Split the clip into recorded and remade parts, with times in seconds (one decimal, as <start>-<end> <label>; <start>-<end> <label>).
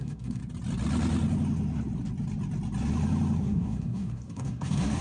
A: 0.0-0.4 remade; 0.4-3.4 recorded; 3.4-5.0 remade